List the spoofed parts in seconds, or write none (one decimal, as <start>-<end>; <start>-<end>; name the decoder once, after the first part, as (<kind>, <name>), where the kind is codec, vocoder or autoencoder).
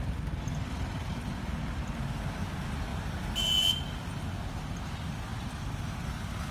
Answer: none